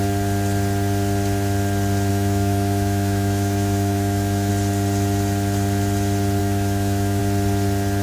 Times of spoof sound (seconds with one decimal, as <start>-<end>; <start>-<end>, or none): 2.1-4.5; 6.4-7.2